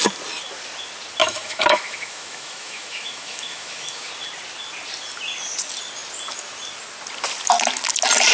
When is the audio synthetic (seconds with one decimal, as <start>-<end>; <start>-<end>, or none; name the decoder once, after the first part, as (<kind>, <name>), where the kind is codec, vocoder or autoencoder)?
1.2-4.1 (autoencoder, DAC-VAE)